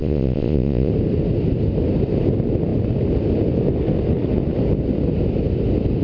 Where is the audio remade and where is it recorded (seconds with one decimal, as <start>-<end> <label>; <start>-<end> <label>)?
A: 0.0-0.9 remade; 0.9-6.0 recorded